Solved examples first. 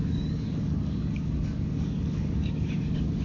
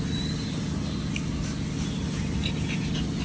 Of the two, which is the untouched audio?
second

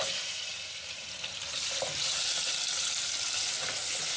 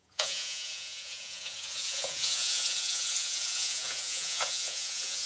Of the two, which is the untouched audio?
first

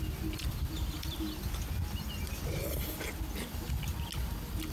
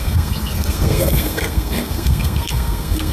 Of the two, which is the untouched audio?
first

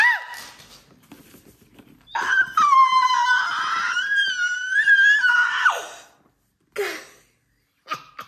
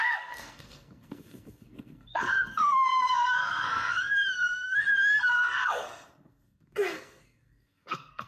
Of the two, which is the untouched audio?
first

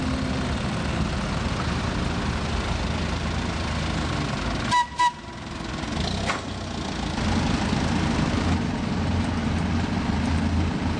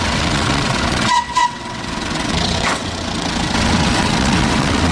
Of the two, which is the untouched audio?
first